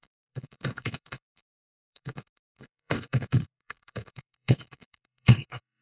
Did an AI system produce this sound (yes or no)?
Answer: yes